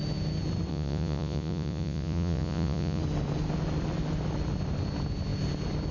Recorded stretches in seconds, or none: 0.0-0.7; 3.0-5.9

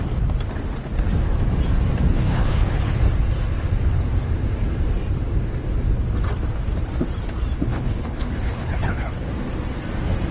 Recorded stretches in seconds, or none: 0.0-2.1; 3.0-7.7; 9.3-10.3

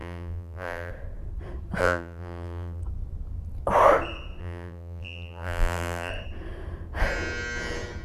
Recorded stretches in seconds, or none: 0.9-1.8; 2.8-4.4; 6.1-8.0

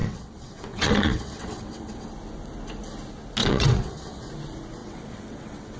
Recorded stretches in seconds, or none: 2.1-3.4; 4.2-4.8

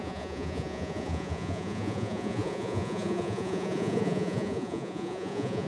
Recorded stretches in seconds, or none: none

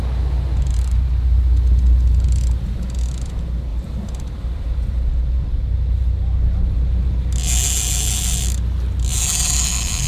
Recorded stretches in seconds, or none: 0.0-3.7; 4.7-10.1

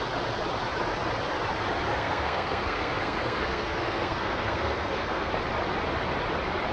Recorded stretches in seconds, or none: 0.0-1.9; 5.3-6.7